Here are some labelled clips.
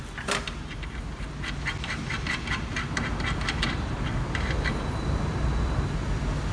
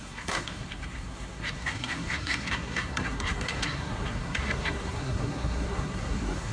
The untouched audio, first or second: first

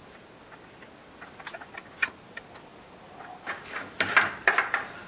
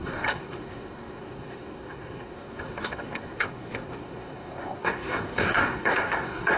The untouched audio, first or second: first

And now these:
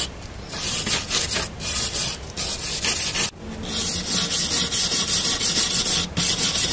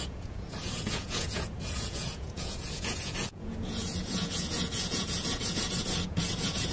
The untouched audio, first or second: first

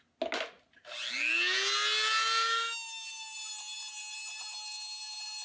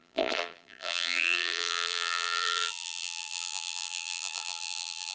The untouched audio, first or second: first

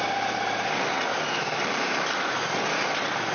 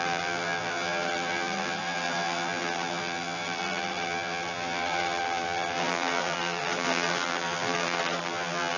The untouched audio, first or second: first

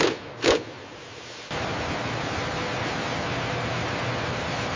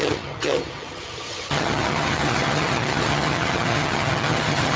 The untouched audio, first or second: first